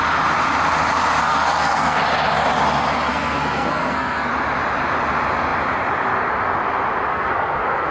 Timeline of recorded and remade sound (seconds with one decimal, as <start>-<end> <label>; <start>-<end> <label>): 0.0-1.2 recorded; 1.2-2.0 remade; 2.0-3.1 recorded; 3.1-4.3 remade; 4.3-7.1 recorded; 7.1-7.9 remade